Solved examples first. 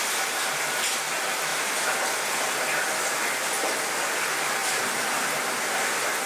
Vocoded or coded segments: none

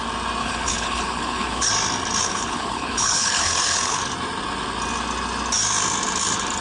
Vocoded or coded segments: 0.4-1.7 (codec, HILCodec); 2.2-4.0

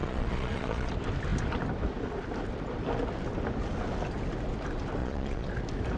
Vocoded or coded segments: 0.0-0.9 (vocoder, Vocos); 5.0-5.5

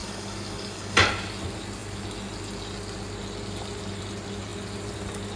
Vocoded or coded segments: 0.0-1.1 (codec, DAC)

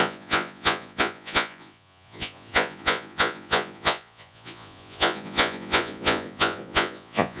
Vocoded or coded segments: 0.0-7.4 (vocoder, Vocos)

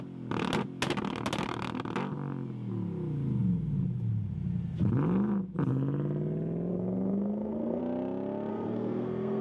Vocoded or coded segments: 6.7-7.8 (codec, SNAC); 8.5-9.4

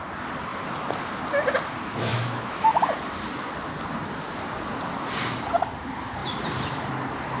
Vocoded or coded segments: 1.9-2.7 (autoencoder, DAC-VAE)